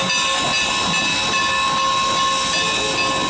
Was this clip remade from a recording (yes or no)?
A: no